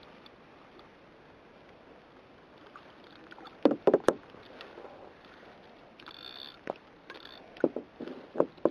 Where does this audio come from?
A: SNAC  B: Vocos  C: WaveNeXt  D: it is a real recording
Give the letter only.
D